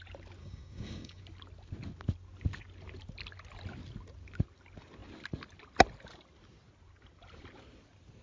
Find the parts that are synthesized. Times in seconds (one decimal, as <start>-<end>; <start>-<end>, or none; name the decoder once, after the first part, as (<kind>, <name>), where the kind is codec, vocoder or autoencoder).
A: 0.4-1.2 (codec, DAC)